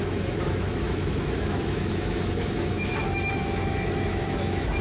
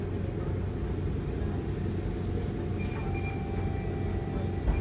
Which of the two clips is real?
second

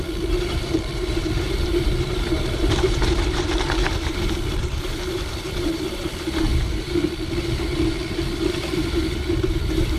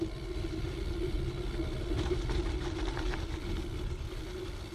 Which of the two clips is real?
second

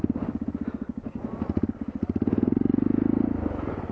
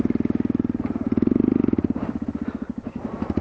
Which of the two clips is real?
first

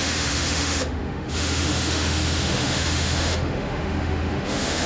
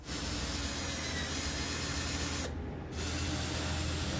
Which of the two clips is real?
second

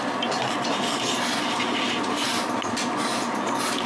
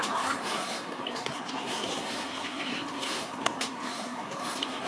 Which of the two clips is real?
first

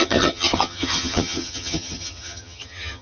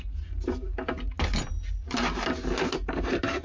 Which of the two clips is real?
second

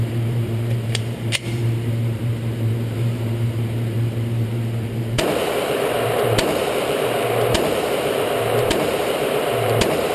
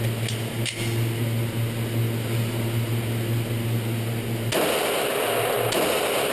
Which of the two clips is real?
second